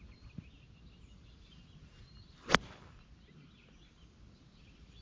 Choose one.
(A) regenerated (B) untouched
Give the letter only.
B